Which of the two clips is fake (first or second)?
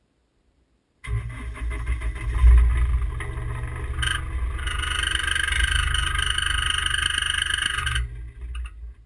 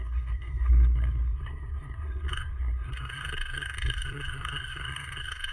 second